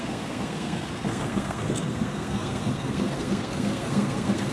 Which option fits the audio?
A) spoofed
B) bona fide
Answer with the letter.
A